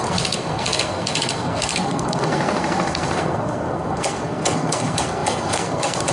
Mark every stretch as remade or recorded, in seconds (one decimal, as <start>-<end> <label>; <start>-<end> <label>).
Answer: 0.0-6.1 remade